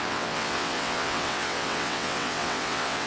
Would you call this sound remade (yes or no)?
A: yes